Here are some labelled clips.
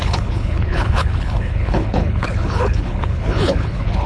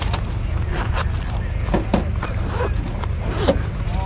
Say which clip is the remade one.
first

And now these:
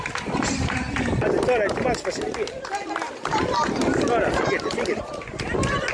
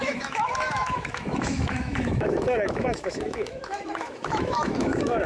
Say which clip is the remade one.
second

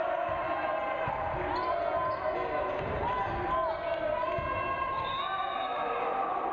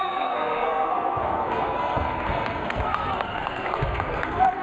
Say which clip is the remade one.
second